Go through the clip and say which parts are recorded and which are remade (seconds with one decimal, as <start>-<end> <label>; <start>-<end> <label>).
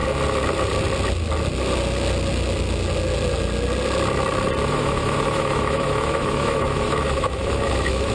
0.0-4.7 recorded; 4.7-8.1 remade